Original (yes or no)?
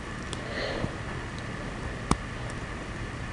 yes